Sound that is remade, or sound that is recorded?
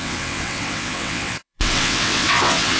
remade